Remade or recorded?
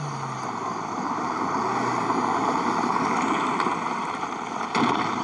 remade